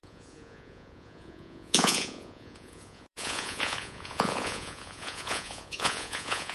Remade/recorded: remade